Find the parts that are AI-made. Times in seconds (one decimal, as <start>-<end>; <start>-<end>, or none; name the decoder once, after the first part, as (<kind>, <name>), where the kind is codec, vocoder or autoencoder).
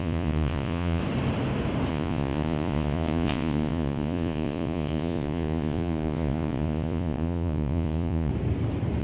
0.0-1.0 (vocoder, Vocos); 1.9-8.3